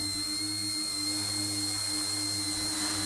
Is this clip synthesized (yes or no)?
no